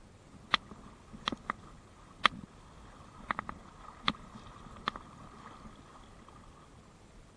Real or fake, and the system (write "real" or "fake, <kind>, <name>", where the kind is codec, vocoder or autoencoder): real